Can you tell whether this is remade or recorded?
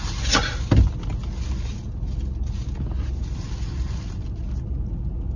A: recorded